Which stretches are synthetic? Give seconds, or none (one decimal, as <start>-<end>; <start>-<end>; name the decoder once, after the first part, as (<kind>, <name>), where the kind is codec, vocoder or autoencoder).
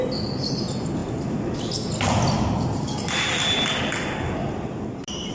none